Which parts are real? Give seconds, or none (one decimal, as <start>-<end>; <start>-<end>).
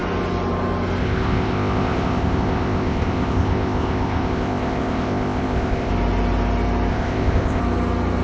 0.0-1.0; 5.9-6.9; 7.6-8.2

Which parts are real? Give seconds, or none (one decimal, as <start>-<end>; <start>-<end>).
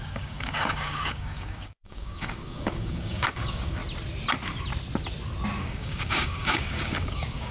3.8-5.6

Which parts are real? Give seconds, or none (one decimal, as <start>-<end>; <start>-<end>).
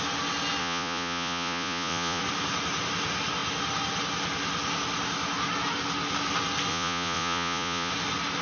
0.0-0.6; 2.2-6.7; 7.9-8.4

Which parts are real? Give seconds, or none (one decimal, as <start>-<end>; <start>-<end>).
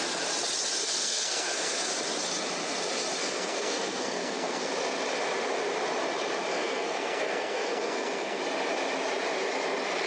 0.0-0.8; 1.9-3.2; 4.7-6.5; 8.4-10.1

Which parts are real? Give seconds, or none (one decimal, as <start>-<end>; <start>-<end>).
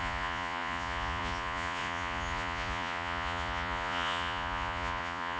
none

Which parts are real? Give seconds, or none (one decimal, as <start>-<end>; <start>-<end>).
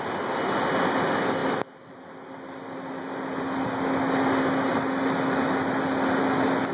0.0-6.7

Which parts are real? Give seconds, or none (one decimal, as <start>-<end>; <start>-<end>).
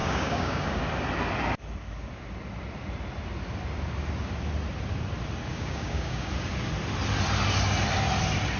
0.8-5.5; 6.3-8.6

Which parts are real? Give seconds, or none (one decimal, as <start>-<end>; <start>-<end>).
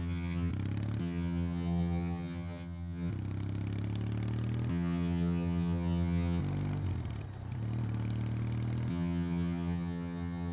0.5-1.0; 3.1-4.7; 6.4-8.9